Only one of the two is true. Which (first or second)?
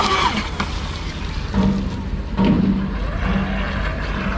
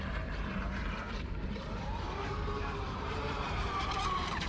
first